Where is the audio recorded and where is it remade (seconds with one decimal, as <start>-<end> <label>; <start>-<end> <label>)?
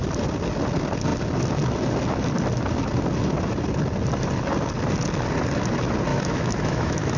0.0-6.1 recorded; 6.1-7.2 remade